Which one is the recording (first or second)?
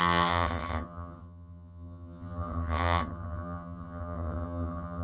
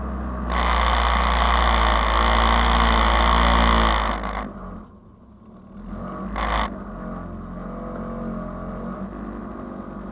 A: second